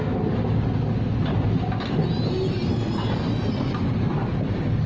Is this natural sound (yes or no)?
yes